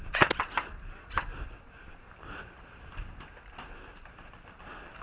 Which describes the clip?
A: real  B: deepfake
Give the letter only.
A